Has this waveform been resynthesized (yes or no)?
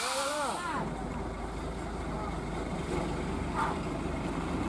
no